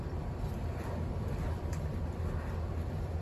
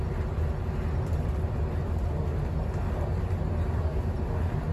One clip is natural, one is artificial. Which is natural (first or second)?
second